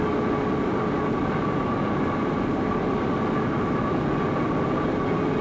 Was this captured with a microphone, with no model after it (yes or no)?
yes